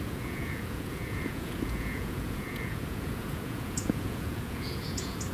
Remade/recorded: remade